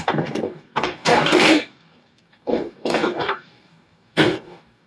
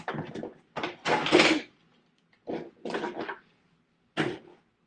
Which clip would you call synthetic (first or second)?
first